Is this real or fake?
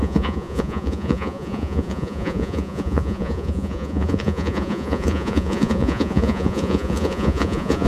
fake